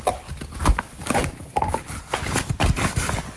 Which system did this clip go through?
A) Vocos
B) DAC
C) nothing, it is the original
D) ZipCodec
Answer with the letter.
C